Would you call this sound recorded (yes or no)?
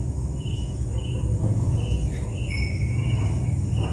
no